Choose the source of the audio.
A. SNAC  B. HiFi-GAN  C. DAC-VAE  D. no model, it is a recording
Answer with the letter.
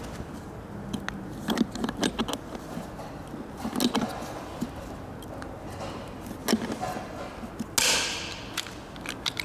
D